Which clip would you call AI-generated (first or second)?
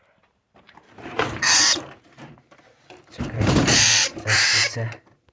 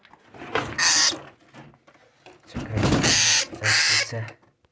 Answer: first